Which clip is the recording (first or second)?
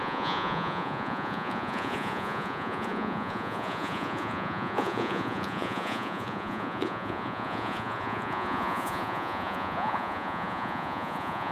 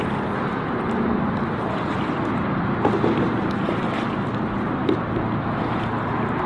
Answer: second